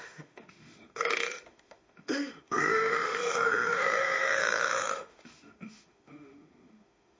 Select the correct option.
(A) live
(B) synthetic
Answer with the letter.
B